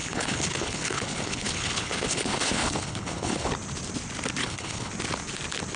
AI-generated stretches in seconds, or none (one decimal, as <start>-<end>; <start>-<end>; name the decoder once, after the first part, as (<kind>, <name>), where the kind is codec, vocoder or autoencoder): 0.0-3.5 (codec, HILCodec); 4.4-4.9